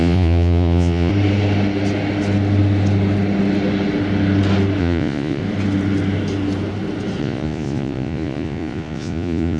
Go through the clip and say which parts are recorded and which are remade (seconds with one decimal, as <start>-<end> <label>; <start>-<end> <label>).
0.0-1.1 remade; 1.1-4.8 recorded; 4.8-5.4 remade; 5.4-7.2 recorded; 7.2-9.6 remade